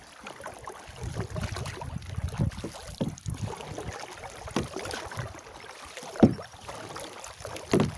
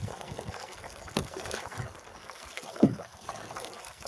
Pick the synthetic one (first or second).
second